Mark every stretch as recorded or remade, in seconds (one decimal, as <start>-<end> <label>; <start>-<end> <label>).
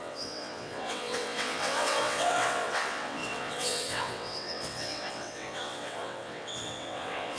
0.0-7.4 remade